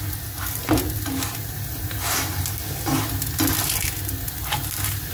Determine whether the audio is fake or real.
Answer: real